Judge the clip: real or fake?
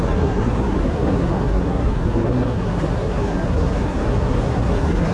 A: fake